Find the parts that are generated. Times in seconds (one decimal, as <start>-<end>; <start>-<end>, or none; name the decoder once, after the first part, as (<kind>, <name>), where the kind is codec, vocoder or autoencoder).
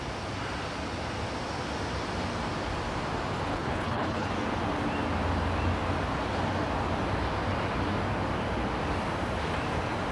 3.5-4.3 (codec, HILCodec)